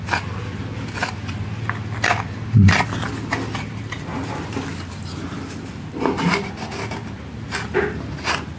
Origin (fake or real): real